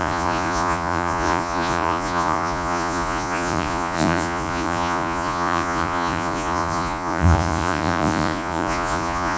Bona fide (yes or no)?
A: no